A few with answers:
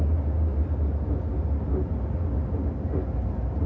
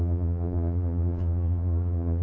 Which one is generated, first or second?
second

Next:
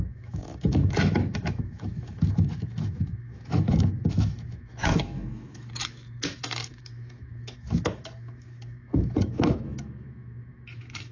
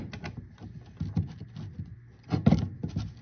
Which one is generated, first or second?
first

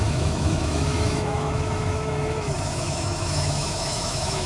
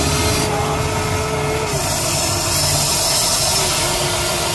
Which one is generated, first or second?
first